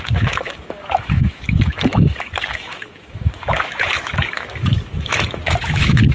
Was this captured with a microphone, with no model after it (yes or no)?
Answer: no